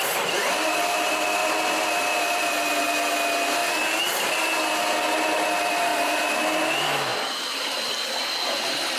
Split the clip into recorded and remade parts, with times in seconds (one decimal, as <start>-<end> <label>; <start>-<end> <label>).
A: 0.0-9.0 recorded